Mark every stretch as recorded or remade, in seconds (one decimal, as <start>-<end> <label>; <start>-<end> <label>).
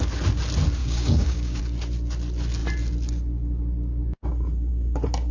0.0-0.8 recorded; 0.8-1.6 remade; 1.6-5.3 recorded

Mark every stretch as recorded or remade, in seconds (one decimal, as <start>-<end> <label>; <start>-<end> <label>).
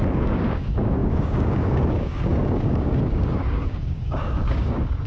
0.0-5.1 remade